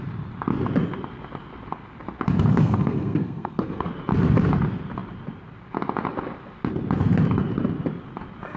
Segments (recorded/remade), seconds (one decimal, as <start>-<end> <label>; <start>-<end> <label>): 0.0-2.5 recorded; 2.5-3.9 remade; 3.9-8.6 recorded